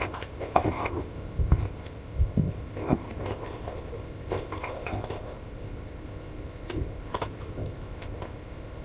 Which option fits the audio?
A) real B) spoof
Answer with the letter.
B